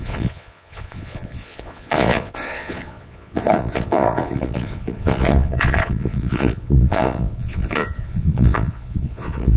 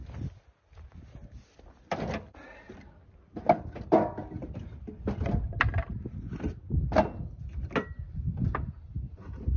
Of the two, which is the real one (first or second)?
second